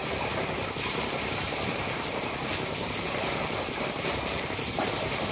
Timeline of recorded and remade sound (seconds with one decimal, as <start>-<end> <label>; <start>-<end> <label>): 0.0-1.5 recorded; 1.5-4.7 remade; 4.7-5.3 recorded